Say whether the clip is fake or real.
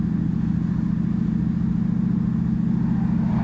real